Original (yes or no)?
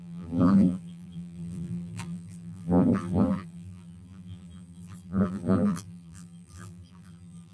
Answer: no